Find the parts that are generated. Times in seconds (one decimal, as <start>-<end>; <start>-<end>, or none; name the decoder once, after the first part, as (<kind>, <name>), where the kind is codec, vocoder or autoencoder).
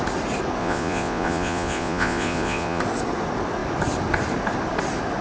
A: 0.6-2.8 (vocoder, Vocos)